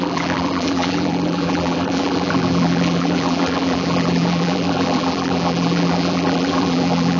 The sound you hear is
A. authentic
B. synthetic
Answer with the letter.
B